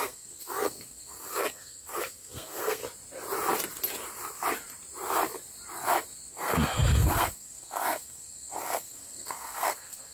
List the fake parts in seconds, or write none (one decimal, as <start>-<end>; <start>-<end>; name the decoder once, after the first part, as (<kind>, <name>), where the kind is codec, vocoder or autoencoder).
0.0-2.8 (codec, SNAC); 6.3-10.1